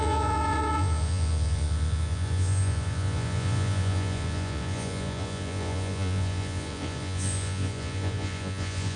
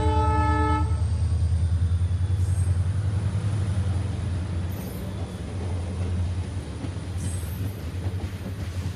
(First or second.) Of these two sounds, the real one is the second